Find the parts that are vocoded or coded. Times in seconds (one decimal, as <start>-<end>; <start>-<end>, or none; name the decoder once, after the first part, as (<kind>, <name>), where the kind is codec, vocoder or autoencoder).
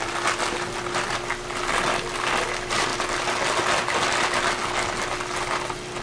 none